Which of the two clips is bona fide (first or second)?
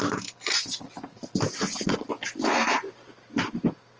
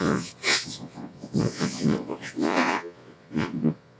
first